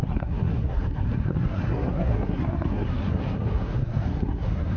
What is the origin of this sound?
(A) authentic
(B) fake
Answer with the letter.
B